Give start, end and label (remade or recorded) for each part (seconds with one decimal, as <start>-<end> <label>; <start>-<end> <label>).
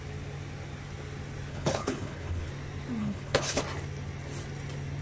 0.0-1.5 recorded; 1.5-2.5 remade; 2.5-3.0 recorded; 3.0-3.6 remade; 3.6-5.0 recorded